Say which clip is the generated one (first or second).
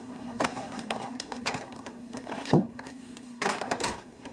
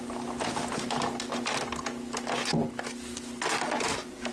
first